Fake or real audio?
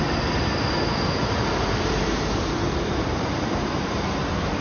fake